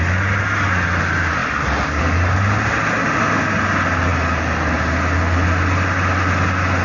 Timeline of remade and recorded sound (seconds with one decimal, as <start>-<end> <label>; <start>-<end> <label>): 0.0-6.8 recorded